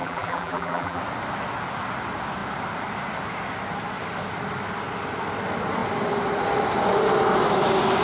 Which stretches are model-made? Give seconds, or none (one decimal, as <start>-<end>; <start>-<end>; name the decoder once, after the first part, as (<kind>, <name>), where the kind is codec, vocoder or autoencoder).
0.0-1.0 (vocoder, BigVGAN v2)